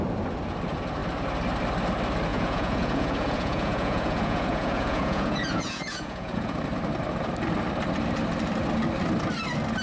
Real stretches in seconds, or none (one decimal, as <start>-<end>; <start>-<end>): 0.0-2.3; 6.6-9.8